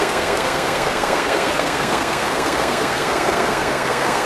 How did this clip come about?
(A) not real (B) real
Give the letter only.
A